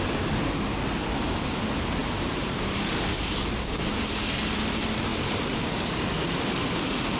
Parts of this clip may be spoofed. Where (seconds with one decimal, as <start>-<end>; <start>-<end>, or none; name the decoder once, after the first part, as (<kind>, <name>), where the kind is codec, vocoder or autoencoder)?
2.0-3.8 (vocoder, BigVGAN v2); 5.1-5.6